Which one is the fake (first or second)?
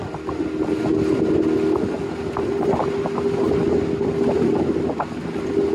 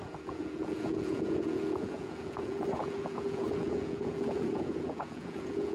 second